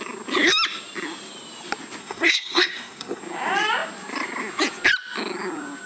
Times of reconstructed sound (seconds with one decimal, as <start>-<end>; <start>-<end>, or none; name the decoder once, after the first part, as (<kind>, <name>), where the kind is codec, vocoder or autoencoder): 2.0-3.2 (codec, SNAC)